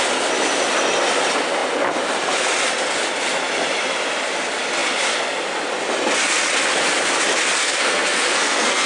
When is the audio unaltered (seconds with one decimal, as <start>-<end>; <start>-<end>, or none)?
0.0-7.6